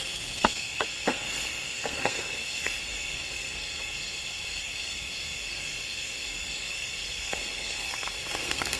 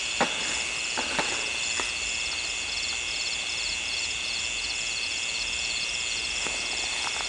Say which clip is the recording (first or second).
second